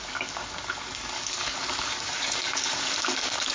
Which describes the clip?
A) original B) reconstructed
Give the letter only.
B